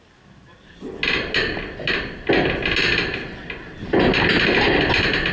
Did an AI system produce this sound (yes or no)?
no